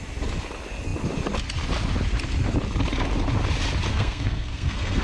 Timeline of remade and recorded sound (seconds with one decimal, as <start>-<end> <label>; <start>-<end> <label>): 0.0-3.9 recorded; 3.9-5.0 remade